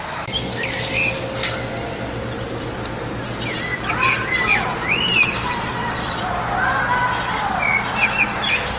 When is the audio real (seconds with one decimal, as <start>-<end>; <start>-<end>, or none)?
0.0-3.7; 6.8-8.8